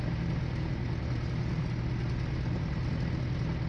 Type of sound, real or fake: real